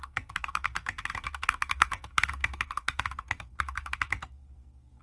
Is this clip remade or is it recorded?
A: remade